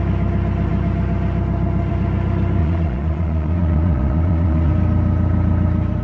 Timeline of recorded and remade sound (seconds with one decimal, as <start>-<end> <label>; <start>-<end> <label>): 0.0-2.6 recorded; 2.6-4.7 remade; 4.7-6.0 recorded